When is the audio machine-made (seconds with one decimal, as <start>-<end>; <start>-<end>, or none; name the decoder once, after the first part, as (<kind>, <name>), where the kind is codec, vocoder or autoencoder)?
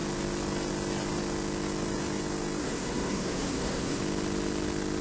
2.6-4.0 (codec, SNAC)